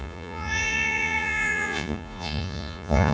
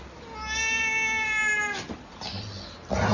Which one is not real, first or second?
first